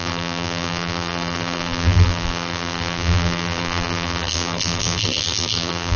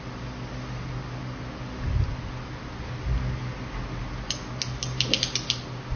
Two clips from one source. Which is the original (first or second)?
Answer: second